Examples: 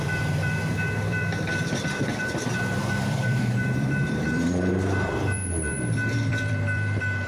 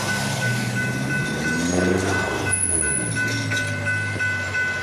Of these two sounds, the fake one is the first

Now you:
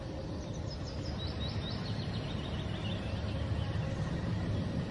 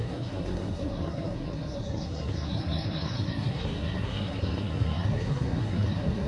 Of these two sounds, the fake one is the second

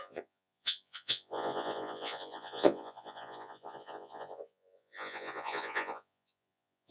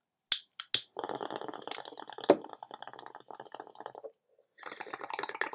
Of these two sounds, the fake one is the first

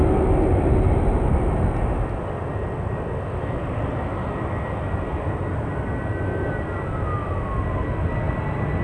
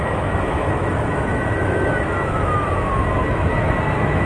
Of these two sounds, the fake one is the second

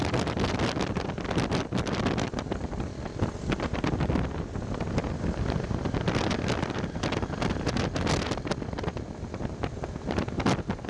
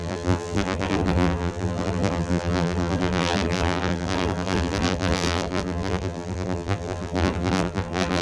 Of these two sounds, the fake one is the second